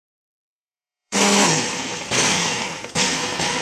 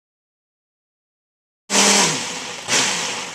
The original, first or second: second